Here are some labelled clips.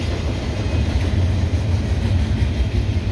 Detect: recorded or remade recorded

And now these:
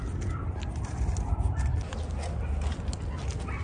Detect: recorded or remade recorded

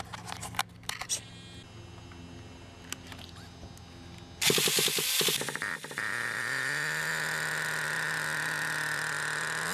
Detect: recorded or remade recorded